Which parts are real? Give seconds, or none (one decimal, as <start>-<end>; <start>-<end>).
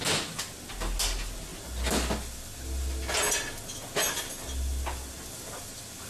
0.0-6.1